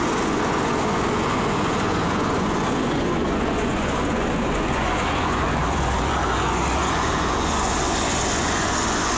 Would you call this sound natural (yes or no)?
no